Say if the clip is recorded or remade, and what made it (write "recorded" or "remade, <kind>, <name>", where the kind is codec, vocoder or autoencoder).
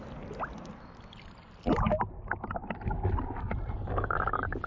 recorded